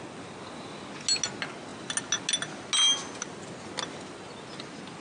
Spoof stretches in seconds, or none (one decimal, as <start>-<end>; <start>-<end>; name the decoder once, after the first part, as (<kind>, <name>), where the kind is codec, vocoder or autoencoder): none

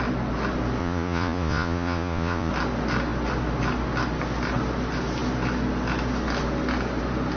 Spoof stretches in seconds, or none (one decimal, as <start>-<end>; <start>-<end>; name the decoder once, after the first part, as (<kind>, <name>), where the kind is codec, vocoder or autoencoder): 0.8-2.5 (vocoder, Vocos)

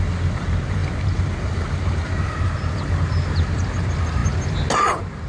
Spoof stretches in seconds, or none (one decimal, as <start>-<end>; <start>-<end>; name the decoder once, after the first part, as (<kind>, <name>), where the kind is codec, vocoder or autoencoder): 0.0-4.2 (vocoder, BigVGAN v2); 4.8-5.3

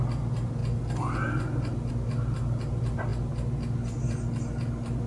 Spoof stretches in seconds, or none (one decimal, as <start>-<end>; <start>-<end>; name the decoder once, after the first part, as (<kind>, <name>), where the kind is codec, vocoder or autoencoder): none

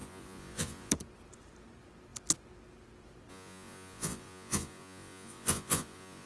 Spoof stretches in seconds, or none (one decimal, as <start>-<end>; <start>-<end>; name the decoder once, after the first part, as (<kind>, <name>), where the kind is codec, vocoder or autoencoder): 0.0-0.9 (vocoder, Vocos); 3.3-6.3

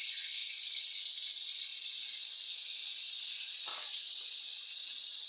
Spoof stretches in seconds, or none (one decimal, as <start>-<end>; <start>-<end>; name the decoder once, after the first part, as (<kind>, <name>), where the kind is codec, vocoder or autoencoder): 3.7-4.6 (vocoder, WaveNeXt)

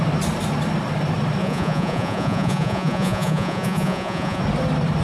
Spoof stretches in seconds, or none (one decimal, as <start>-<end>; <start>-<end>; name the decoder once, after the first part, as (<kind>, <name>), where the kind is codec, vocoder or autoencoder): 1.4-4.4 (vocoder, Vocos)